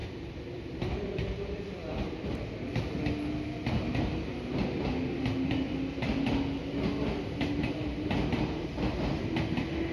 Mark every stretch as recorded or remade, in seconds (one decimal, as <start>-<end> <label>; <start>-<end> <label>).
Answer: 0.0-2.6 remade; 2.6-9.9 recorded